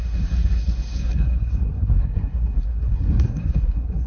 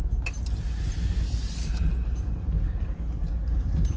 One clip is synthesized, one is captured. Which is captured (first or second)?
second